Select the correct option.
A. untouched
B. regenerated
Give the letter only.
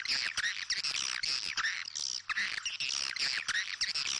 A